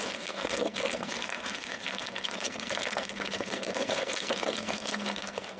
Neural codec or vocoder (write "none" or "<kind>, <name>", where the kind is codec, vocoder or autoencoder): codec, SNAC